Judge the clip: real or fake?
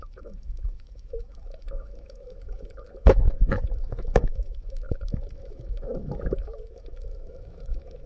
fake